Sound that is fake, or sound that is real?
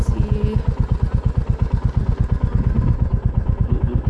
real